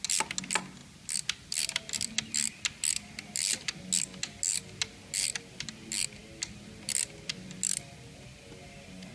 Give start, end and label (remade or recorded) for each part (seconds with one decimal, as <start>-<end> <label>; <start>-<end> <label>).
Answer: 0.0-9.1 recorded